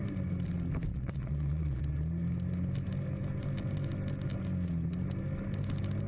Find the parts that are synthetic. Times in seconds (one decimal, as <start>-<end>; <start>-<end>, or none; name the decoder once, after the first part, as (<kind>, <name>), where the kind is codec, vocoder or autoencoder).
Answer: 0.9-1.8 (vocoder, Vocos)